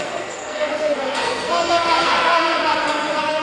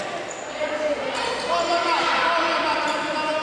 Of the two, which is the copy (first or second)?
first